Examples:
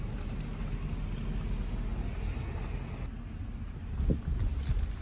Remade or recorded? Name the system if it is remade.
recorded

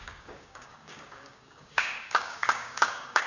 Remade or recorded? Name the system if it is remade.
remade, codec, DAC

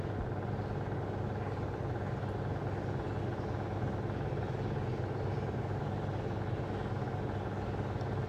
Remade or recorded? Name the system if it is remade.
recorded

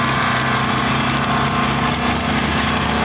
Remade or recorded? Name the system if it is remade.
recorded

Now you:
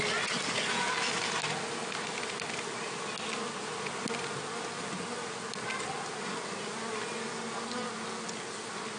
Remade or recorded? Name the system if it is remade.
recorded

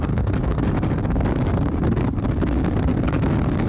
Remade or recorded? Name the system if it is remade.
remade, codec, DAC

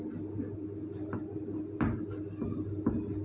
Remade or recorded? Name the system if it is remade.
recorded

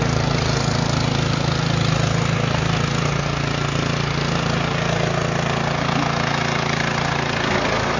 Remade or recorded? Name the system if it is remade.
recorded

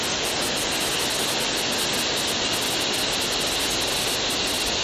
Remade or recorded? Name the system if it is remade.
recorded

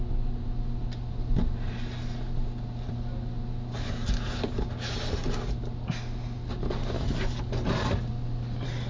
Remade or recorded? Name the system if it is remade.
recorded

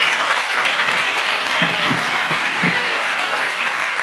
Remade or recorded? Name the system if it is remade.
remade, codec, DAC